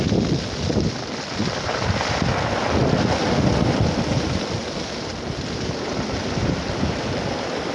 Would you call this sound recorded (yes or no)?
yes